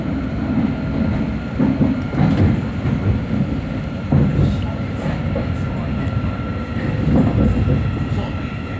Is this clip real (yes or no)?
yes